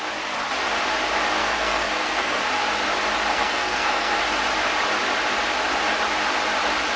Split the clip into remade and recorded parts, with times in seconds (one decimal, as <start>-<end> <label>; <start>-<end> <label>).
0.0-1.4 recorded; 1.4-2.4 remade; 2.4-3.3 recorded; 3.3-4.2 remade; 4.2-7.0 recorded